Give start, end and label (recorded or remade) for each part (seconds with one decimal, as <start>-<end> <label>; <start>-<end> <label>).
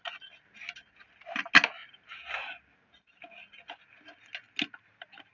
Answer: 0.0-5.3 recorded